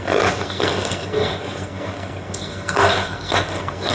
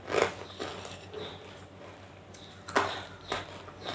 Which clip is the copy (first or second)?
first